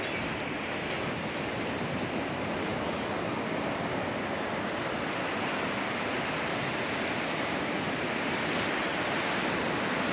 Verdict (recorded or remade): recorded